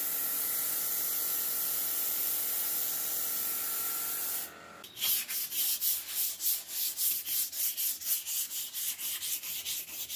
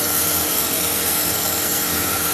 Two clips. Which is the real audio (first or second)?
first